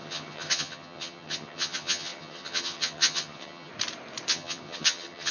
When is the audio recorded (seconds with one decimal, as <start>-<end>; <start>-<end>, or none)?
3.7-4.3